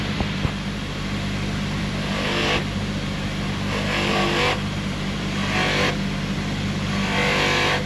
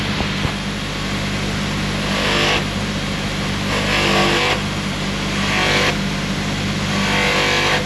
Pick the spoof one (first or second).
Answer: first